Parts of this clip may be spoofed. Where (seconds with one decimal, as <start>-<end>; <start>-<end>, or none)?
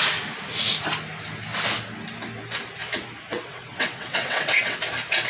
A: 3.3-4.8